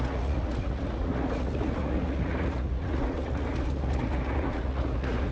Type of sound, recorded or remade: remade